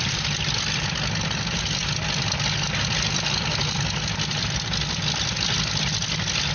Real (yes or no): yes